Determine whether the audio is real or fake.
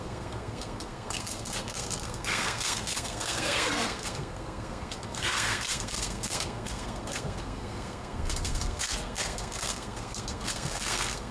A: fake